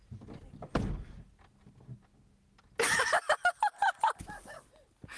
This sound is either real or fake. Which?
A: real